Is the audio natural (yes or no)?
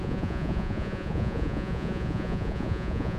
no